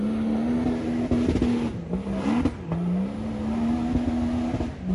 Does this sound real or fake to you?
real